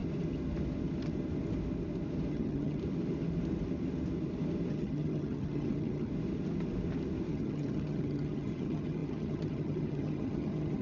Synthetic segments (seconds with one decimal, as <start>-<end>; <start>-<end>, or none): 2.3-2.8; 4.7-6.1; 7.3-10.8